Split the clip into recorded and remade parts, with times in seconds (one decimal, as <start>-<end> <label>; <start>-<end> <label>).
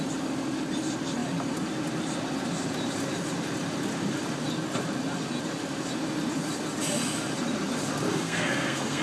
0.0-8.1 recorded; 8.1-9.0 remade